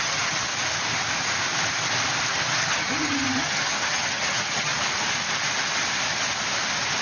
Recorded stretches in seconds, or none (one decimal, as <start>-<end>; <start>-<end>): 0.5-2.3; 4.7-7.0